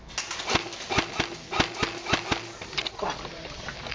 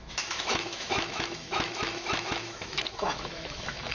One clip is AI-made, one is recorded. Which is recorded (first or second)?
first